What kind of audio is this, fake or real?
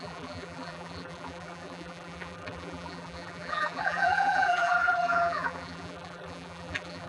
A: fake